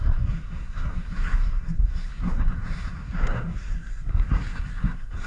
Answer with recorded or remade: remade